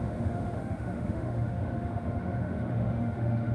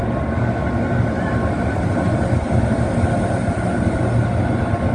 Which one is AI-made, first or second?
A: first